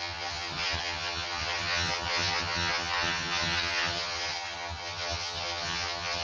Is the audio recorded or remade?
remade